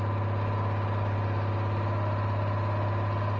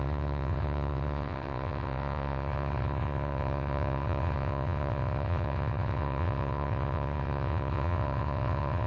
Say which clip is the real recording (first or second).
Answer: first